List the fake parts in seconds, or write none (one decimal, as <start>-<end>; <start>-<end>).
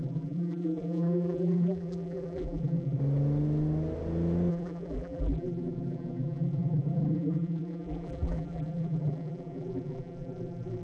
0.0-3.0; 4.5-10.8